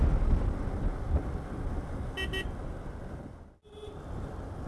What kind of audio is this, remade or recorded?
recorded